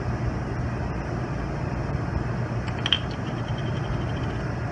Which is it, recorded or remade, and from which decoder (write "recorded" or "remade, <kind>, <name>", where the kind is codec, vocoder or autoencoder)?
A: recorded